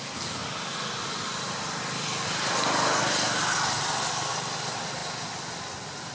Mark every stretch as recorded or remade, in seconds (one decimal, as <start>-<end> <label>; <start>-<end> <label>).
0.0-6.1 recorded